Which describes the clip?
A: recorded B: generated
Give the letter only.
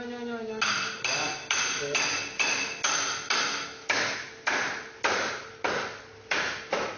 A